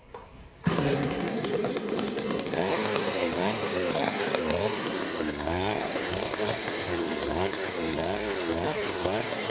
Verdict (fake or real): fake